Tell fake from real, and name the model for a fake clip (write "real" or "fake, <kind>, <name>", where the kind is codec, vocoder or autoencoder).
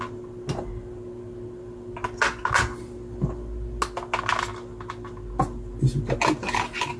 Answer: real